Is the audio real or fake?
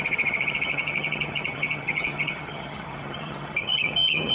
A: fake